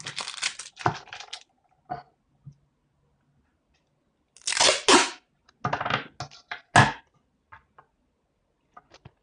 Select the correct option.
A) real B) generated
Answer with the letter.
A